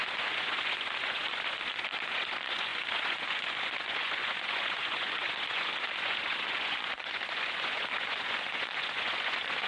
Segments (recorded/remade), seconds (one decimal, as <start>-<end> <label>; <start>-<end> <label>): 0.0-9.7 remade